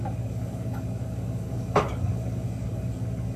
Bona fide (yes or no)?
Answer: no